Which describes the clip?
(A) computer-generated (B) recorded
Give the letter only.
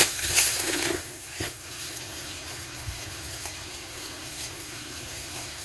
A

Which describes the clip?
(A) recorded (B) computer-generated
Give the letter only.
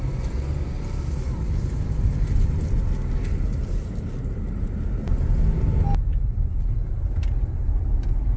A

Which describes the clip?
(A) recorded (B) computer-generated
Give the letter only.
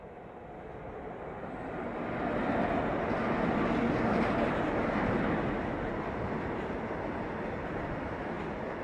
A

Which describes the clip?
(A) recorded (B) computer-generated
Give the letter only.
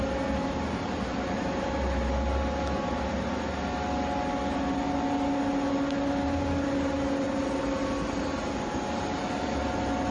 A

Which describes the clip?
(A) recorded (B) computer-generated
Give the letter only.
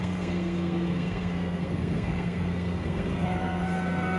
B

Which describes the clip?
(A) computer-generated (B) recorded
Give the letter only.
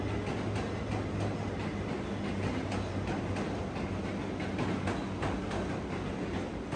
B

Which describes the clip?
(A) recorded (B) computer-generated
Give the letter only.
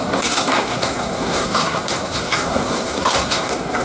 B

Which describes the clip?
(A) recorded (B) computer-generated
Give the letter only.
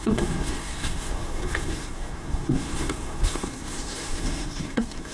B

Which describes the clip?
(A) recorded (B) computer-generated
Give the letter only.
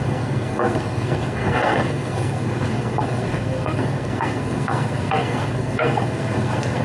B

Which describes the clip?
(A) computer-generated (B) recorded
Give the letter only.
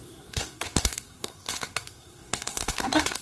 A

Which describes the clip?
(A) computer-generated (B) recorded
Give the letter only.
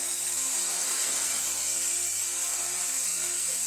A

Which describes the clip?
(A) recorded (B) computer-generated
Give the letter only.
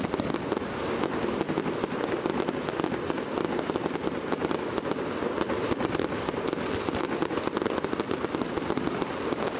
A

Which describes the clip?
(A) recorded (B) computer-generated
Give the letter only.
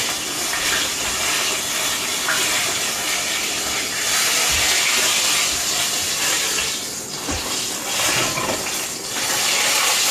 A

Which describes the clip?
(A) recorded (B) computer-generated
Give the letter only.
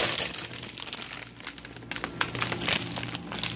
A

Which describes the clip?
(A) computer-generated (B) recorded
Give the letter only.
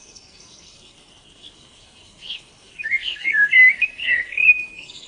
A